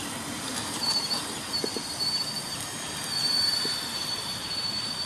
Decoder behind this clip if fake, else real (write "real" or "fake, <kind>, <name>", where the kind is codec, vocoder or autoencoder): real